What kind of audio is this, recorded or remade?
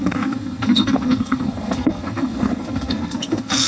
remade